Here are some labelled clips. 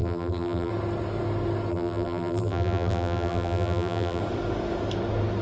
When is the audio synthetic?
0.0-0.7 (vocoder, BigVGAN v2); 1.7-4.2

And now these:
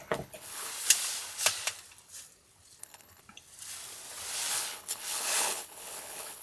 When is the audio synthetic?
0.0-0.7 (codec, HILCodec); 2.8-3.2; 4.5-6.4

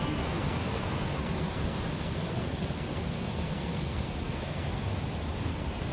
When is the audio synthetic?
0.0-4.9 (codec, SNAC); 5.4-5.9

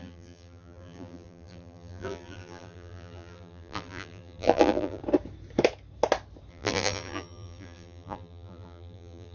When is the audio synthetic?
0.0-5.0 (vocoder, BigVGAN v2); 6.5-9.3

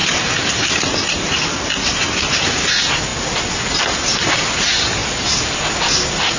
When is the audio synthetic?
none